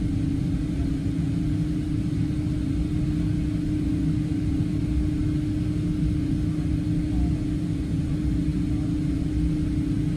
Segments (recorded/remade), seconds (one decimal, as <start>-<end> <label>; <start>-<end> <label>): 0.0-10.2 recorded